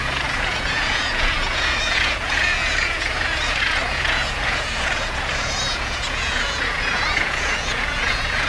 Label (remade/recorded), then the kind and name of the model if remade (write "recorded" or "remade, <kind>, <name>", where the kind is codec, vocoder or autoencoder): remade, vocoder, Vocos